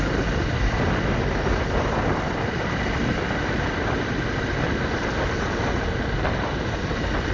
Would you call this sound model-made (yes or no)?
no